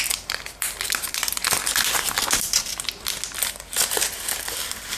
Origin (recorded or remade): recorded